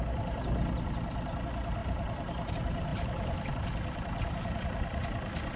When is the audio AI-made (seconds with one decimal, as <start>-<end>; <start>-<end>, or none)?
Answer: 1.8-2.5; 2.9-3.5